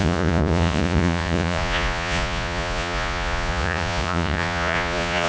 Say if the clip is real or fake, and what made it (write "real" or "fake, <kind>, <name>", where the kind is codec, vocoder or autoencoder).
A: fake, vocoder, Vocos